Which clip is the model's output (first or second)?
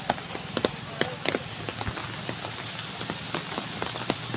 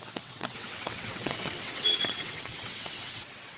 second